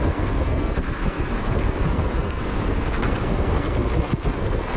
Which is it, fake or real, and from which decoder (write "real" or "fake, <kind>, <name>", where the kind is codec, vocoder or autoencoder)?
fake, codec, SNAC